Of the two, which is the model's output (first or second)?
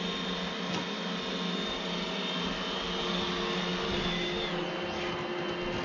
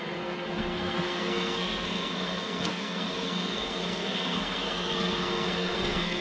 second